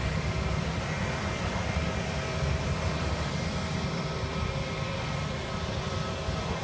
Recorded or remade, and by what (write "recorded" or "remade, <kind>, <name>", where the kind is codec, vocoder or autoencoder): remade, vocoder, BigVGAN v2